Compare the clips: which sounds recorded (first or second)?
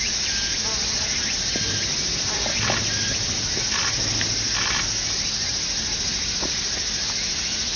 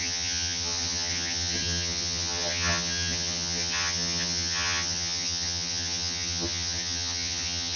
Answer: first